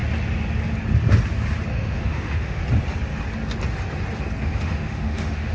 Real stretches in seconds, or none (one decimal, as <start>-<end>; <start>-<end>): 0.0-1.7; 2.6-4.4